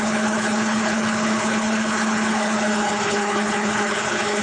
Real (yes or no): no